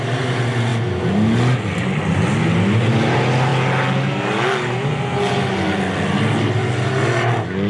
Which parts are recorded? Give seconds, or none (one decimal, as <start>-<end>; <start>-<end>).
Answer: 0.0-7.7